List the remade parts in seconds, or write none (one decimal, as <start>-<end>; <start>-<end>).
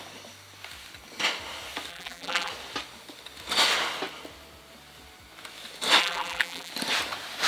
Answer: 1.9-2.5; 6.0-6.7